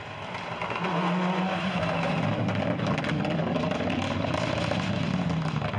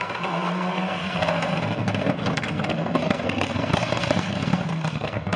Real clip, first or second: first